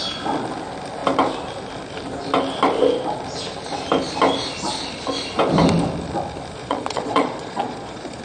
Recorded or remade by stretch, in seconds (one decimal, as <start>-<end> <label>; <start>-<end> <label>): 0.0-6.6 recorded; 6.6-8.2 remade